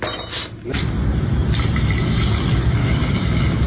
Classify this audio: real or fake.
real